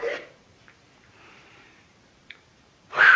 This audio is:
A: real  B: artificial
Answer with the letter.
B